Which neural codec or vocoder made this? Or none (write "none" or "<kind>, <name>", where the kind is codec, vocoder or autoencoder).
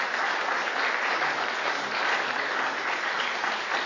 none